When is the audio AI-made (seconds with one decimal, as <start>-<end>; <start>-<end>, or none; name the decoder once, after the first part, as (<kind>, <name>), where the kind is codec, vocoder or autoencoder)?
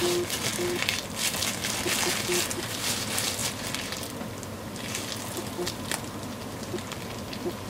none